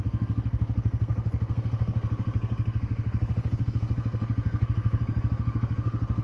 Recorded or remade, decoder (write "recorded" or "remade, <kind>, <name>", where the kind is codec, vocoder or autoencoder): remade, codec, SNAC